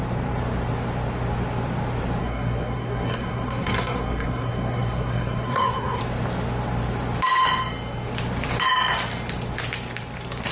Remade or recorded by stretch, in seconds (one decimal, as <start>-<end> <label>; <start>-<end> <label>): 0.0-2.2 recorded; 2.2-6.0 remade; 6.0-10.5 recorded